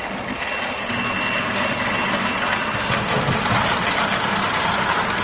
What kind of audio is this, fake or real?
real